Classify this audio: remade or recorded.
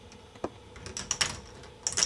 recorded